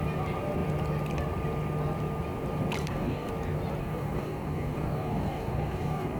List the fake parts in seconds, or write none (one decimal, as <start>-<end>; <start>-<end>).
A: 2.8-3.3; 3.8-6.2